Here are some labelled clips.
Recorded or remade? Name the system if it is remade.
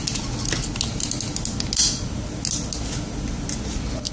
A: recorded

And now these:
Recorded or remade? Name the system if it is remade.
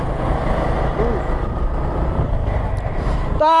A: recorded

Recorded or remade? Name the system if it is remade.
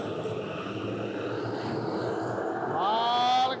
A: recorded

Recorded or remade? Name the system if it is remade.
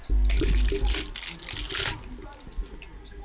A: recorded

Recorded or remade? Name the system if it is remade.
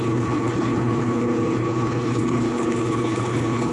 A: remade, codec, HILCodec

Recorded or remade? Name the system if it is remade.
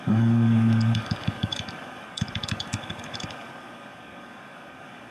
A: remade, codec, DAC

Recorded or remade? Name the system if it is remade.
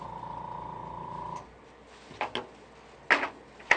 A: recorded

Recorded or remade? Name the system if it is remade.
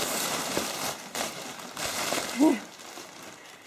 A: remade, vocoder, BigVGAN v2